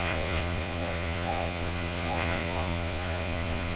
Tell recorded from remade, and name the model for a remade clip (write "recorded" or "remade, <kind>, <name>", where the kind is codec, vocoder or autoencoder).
remade, vocoder, Vocos